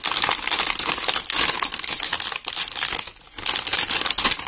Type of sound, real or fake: real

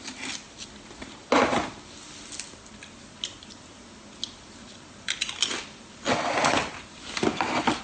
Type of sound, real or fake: real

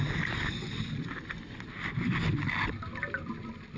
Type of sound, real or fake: real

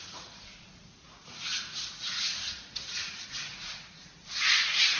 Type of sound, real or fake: fake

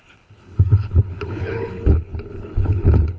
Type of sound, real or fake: fake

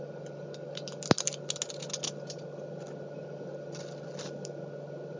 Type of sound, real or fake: real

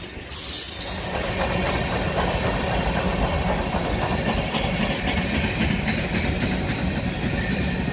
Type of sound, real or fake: real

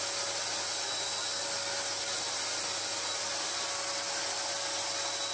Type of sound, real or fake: real